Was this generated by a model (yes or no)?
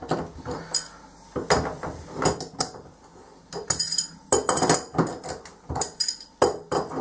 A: no